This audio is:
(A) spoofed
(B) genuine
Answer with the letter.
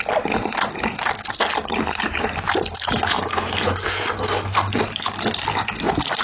B